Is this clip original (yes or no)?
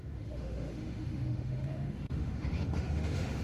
no